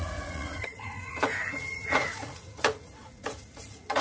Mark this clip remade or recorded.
remade